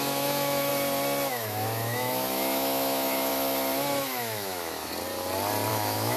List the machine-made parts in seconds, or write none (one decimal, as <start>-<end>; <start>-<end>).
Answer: 0.0-0.7; 1.3-3.3; 4.0-4.9; 5.7-6.2